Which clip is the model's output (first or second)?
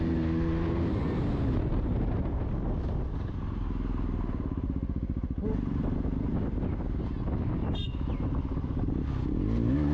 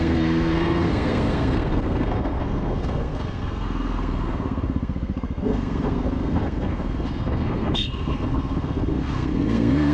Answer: second